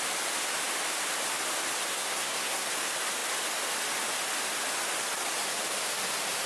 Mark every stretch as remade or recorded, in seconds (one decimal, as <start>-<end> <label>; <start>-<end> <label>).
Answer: 0.0-1.9 recorded; 1.9-2.7 remade; 2.7-6.5 recorded